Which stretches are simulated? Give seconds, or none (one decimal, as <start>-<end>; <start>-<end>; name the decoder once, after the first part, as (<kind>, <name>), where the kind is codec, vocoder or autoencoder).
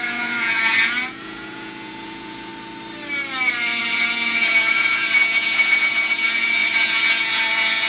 0.0-2.5 (vocoder, Vocos); 3.8-7.9